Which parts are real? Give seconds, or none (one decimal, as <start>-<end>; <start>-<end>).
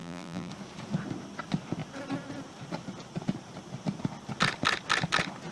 0.5-5.5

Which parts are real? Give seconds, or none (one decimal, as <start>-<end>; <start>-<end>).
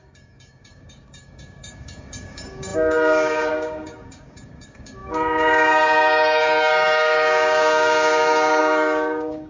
none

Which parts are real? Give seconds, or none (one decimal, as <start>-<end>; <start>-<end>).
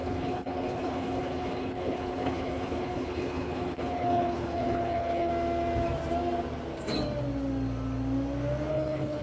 5.3-8.7